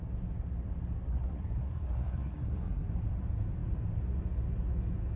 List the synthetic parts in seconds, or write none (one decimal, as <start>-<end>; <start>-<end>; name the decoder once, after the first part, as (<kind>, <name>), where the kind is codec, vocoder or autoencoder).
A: 1.1-2.9 (codec, SNAC)